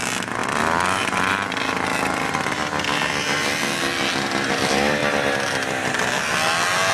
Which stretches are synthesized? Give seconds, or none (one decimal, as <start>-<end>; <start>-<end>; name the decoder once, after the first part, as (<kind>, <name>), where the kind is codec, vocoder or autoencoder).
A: none